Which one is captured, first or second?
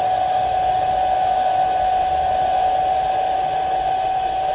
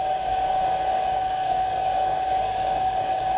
first